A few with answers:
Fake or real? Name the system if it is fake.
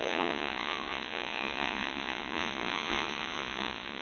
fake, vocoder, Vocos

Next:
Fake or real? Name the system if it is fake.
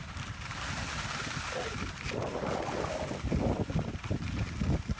real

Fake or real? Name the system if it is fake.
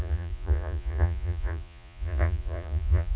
fake, vocoder, Vocos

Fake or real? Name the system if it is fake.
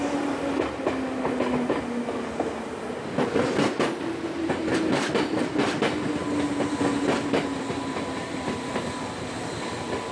real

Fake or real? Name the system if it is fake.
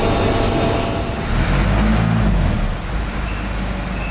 real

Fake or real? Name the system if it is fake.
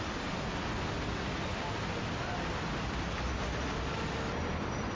real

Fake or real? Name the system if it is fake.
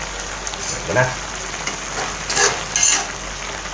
real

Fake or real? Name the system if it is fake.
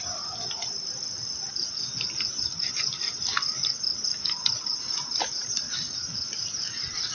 real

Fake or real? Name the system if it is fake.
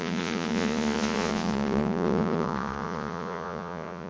fake, vocoder, Vocos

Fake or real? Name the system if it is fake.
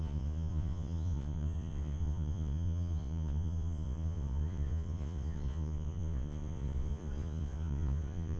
fake, vocoder, Vocos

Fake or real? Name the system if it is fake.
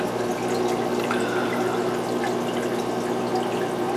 real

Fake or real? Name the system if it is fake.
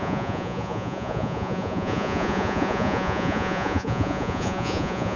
fake, vocoder, Vocos